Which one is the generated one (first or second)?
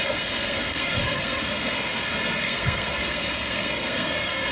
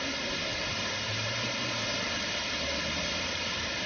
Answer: first